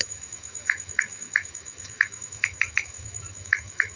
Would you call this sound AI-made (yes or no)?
yes